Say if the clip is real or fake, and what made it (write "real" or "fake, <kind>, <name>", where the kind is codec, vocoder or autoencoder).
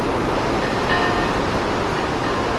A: real